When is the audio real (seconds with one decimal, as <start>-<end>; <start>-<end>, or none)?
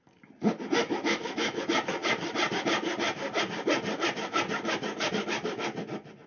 0.0-0.8; 1.6-6.3